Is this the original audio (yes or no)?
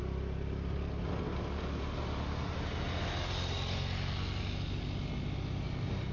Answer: yes